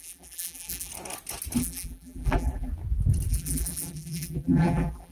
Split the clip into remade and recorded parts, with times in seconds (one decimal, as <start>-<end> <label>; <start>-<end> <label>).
0.0-0.9 remade; 0.9-1.6 recorded; 1.6-2.7 remade; 2.7-3.3 recorded; 3.3-5.1 remade